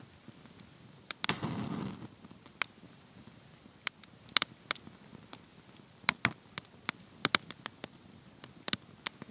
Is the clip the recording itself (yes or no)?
yes